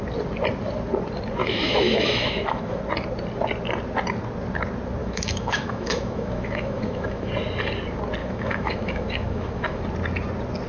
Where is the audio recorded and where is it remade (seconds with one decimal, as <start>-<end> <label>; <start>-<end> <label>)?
0.0-1.4 recorded; 1.4-2.8 remade; 2.8-5.0 recorded; 5.0-7.3 remade; 7.3-8.2 recorded; 8.2-9.8 remade; 9.8-10.7 recorded